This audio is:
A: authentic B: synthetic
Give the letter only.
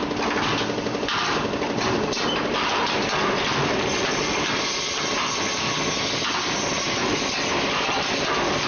A